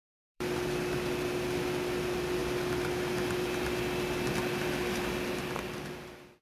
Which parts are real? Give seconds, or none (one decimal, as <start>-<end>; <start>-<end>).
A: 2.4-4.3